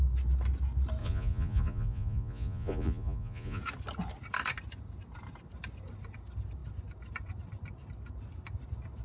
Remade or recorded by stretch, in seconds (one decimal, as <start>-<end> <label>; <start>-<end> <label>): 0.0-1.0 recorded; 1.0-3.6 remade; 3.6-9.0 recorded